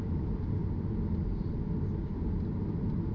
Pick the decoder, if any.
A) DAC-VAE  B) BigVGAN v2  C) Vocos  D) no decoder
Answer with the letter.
D